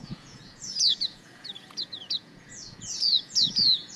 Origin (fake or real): fake